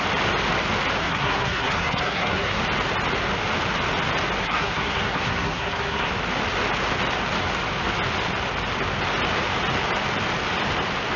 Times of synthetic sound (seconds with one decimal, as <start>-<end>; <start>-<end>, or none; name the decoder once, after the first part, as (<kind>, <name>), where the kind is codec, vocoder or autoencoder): 1.0-2.6 (codec, SNAC); 4.4-6.1